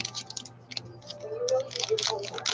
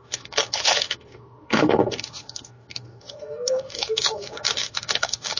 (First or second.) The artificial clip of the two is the second